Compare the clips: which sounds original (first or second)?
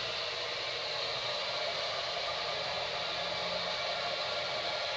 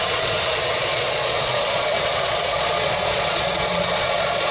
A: first